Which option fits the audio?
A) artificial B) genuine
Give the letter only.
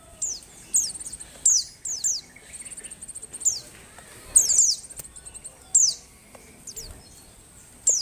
B